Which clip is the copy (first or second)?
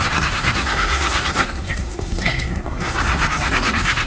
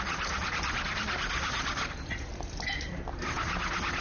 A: first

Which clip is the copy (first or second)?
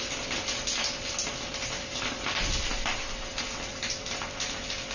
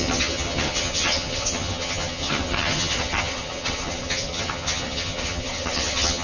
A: second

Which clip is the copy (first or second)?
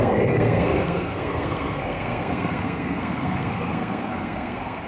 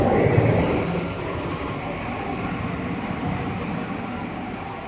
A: first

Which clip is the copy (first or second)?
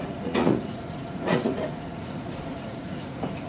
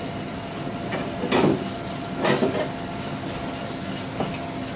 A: first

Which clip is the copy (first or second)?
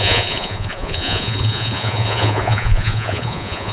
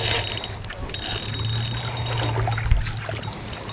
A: first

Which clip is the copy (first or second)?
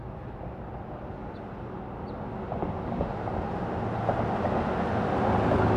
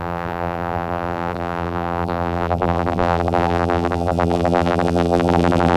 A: second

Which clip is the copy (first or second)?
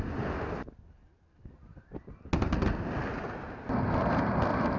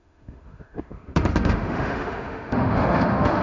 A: second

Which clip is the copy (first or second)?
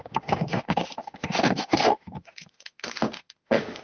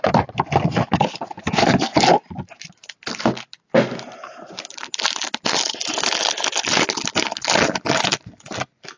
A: first